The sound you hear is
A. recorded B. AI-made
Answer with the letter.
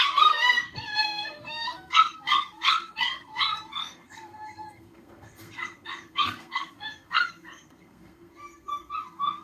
B